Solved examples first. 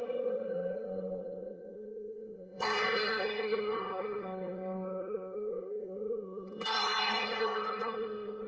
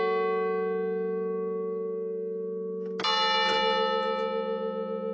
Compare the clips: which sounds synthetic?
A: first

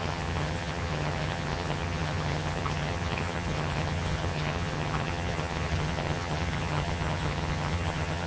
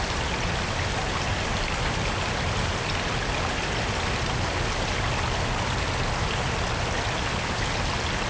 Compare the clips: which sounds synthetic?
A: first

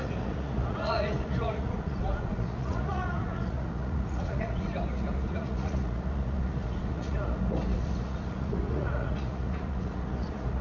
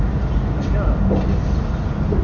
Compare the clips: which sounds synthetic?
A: first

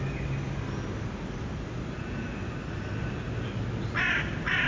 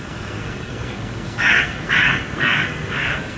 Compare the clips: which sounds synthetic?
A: second